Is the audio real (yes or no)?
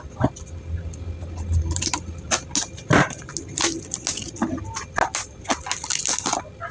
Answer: yes